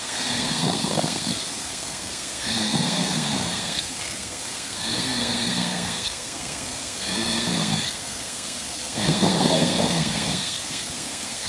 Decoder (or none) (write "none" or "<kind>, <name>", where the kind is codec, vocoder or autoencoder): codec, SNAC